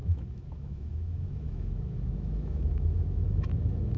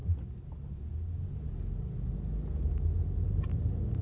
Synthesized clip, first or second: first